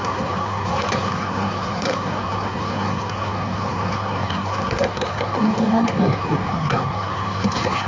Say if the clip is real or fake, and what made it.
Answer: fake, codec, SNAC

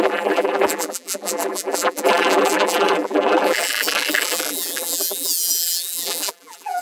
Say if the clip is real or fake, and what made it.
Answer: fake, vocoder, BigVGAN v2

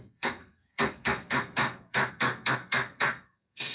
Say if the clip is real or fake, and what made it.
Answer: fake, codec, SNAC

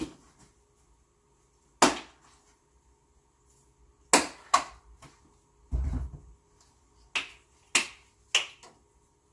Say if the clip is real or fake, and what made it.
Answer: real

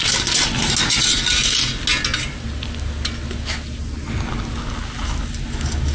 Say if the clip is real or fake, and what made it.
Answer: real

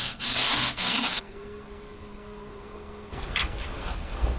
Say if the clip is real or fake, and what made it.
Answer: fake, codec, SNAC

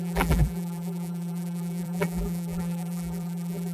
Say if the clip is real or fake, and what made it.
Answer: fake, vocoder, BigVGAN v2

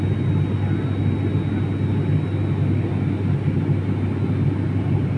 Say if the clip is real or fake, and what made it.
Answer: real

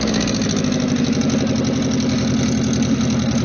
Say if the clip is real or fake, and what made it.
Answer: real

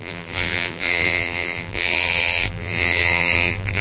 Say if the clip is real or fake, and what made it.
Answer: fake, vocoder, BigVGAN v2